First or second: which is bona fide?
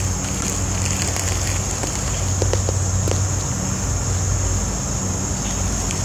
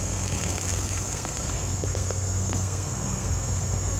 first